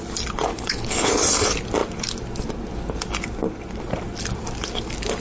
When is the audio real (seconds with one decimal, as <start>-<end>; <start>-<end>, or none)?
0.0-0.5; 1.1-5.2